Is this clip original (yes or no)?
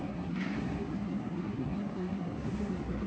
no